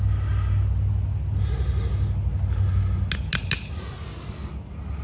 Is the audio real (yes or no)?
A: yes